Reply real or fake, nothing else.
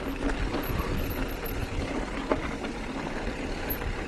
real